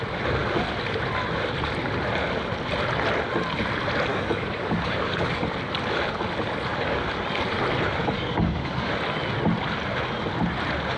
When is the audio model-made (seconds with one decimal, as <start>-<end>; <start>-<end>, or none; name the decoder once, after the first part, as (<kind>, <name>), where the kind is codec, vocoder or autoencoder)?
4.1-5.4 (codec, DAC); 6.7-7.2; 8.0-8.9